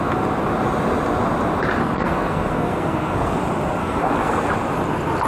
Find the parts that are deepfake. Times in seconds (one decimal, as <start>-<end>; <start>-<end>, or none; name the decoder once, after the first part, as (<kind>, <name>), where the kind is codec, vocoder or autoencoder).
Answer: 1.8-3.4 (codec, SNAC); 3.8-4.5